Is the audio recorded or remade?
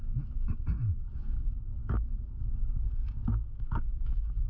remade